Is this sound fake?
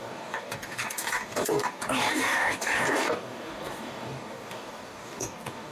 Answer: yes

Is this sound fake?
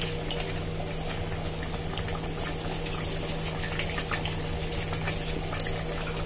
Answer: no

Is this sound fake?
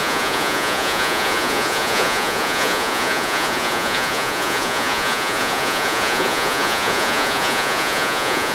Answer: yes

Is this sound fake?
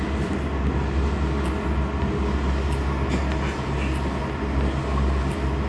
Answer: no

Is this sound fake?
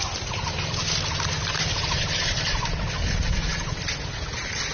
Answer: no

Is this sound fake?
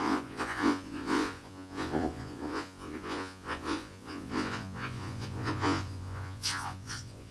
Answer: yes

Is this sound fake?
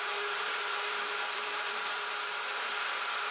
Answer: yes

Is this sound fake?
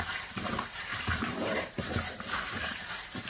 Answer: yes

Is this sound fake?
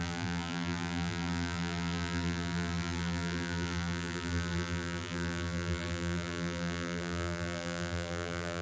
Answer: yes